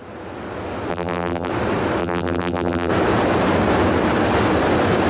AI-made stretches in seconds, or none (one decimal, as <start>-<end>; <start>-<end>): 0.9-1.5; 2.0-2.9